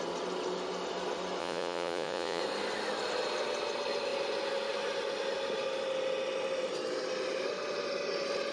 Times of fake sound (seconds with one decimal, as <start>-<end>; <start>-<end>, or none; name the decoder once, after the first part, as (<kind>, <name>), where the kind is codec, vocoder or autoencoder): 1.4-2.4 (vocoder, Vocos)